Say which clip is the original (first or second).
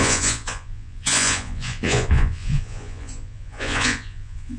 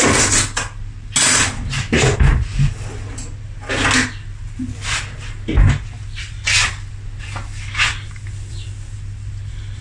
second